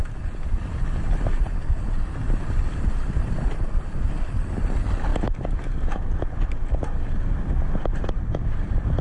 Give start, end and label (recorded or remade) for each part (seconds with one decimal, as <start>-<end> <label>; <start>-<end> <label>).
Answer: 0.0-9.0 recorded